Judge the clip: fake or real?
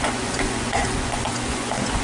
fake